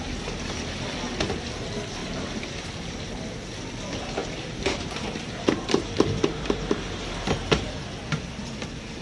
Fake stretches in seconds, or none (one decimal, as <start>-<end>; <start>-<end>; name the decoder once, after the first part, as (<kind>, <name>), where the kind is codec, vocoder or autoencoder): 2.0-3.1 (vocoder, BigVGAN v2); 4.2-7.9